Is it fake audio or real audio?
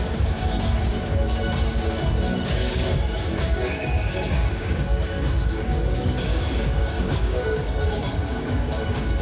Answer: fake